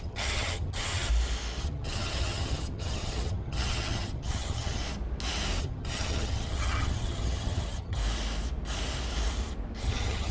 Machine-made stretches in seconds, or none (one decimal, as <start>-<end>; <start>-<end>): 0.0-1.1; 1.6-4.8; 5.6-8.0; 9.8-10.3